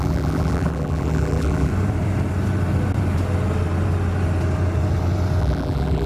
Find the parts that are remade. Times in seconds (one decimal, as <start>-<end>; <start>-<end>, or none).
0.0-1.7; 5.4-6.1

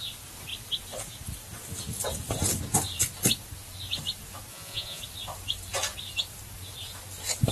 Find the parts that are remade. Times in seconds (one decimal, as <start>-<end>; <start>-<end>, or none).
4.5-5.0

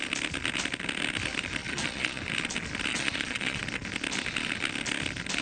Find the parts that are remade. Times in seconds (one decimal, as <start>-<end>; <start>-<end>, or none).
1.6-2.2; 2.9-3.6

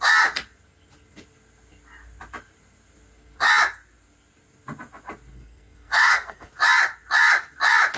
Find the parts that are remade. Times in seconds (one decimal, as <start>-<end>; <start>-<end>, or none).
5.3-6.5

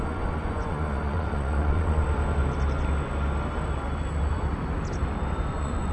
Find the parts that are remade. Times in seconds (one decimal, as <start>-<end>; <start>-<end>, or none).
0.0-2.0; 5.5-5.9

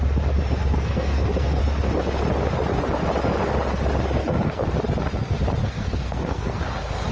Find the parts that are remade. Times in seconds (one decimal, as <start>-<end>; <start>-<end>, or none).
0.6-1.6; 4.2-4.7; 5.6-6.6